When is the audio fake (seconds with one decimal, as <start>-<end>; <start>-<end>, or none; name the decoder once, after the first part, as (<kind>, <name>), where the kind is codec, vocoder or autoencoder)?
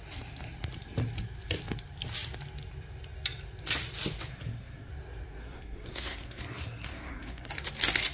4.3-4.9 (codec, SNAC); 5.4-7.5